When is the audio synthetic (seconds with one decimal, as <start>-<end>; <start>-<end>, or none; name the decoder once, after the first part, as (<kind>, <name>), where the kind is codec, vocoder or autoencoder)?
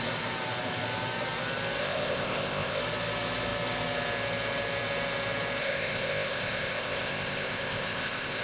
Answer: 1.8-2.8 (codec, ZipCodec); 5.6-8.4